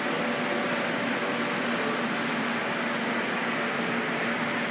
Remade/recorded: recorded